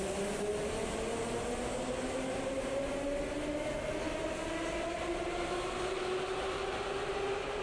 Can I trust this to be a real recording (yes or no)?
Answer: yes